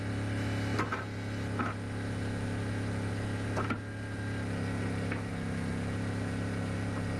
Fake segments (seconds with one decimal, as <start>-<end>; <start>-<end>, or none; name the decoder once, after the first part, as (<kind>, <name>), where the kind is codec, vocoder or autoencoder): none